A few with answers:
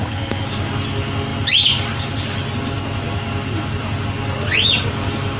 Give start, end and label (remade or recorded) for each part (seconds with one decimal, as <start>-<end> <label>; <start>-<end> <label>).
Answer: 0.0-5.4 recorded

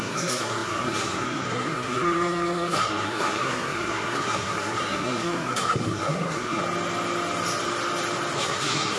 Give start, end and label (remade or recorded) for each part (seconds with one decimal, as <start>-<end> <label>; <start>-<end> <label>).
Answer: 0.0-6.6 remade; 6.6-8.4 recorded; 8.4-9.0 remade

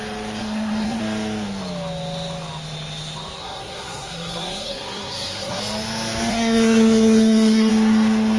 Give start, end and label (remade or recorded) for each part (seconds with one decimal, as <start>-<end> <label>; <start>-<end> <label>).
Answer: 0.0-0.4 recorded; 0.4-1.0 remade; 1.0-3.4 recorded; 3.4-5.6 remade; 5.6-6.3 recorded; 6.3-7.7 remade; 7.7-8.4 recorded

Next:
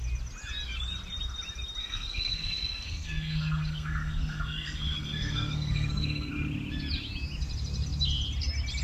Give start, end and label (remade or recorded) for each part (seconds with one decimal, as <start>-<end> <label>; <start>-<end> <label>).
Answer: 0.0-1.8 recorded; 1.8-6.3 remade; 6.3-8.8 recorded

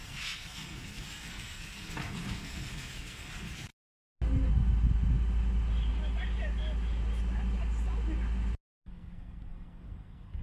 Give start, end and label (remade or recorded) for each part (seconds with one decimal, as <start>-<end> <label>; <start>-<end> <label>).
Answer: 0.0-3.7 remade; 3.7-8.9 recorded; 8.9-10.4 remade